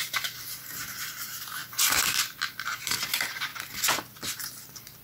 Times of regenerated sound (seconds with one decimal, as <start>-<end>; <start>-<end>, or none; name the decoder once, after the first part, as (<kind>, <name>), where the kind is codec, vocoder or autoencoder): 0.0-1.6 (vocoder, BigVGAN v2); 2.3-3.5; 4.4-5.0